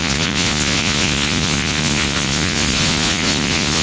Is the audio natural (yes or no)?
no